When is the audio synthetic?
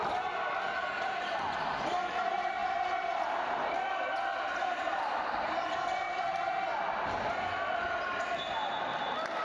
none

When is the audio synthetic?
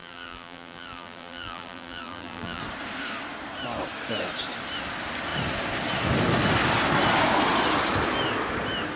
0.0-2.6 (vocoder, BigVGAN v2)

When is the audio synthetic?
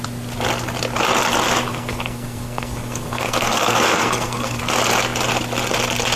1.7-4.6 (codec, SNAC)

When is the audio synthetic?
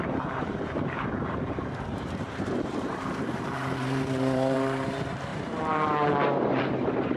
0.0-7.2 (vocoder, BigVGAN v2)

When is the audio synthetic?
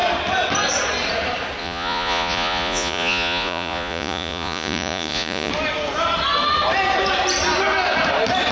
1.6-5.5 (vocoder, Vocos)